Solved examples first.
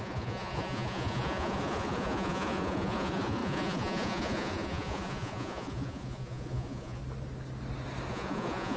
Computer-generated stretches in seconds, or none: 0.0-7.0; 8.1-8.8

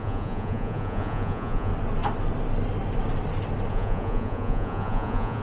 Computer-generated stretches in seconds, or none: 0.0-1.7; 3.7-5.4

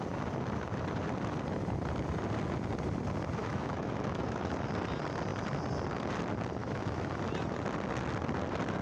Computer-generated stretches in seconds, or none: 3.4-4.5; 6.6-7.2

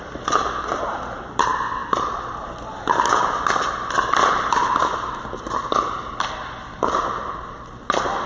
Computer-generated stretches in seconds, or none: 0.0-8.3

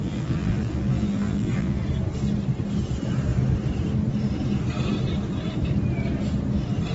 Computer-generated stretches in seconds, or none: 0.0-1.8